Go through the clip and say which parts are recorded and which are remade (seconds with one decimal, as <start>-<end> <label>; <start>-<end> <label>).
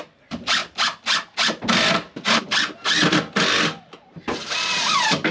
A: 0.0-5.3 recorded